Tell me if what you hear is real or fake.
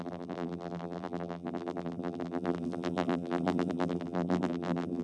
fake